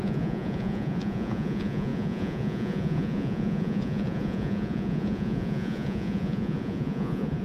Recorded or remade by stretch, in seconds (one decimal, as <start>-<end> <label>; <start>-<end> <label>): 0.0-7.4 remade